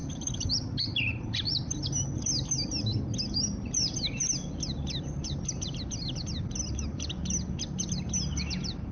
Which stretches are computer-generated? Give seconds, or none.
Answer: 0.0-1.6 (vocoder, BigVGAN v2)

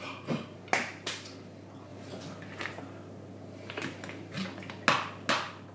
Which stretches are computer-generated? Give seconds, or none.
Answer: none

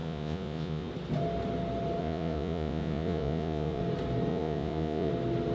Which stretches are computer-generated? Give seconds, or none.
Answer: 0.0-0.9 (vocoder, Vocos); 2.0-3.8; 4.3-5.1

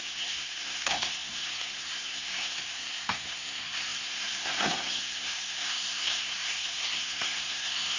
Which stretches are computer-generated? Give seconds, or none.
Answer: 0.0-8.0 (codec, SNAC)

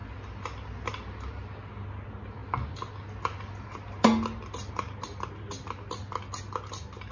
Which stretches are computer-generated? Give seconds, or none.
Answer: none

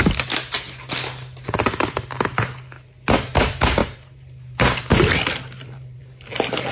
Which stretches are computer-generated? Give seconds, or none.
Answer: 3.8-6.0 (vocoder, BigVGAN v2)